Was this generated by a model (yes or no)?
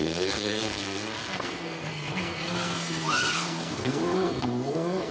yes